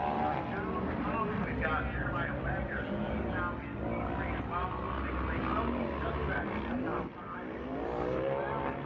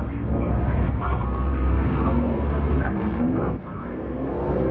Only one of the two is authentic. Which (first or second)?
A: first